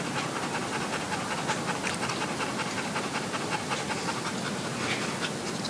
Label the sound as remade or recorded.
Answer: recorded